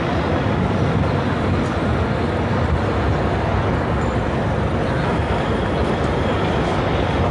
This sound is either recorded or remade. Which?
recorded